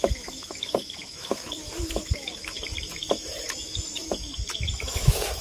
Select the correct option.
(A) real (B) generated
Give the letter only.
B